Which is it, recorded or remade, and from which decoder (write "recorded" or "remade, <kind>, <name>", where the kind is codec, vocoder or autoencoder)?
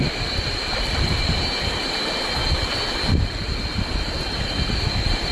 recorded